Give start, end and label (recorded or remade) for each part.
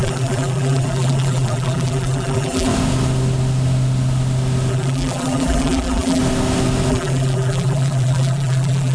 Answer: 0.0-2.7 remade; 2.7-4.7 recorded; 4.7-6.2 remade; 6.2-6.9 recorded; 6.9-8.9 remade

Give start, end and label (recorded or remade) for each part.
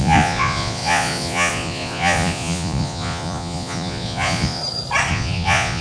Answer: 0.0-4.6 remade; 4.6-5.1 recorded; 5.1-5.8 remade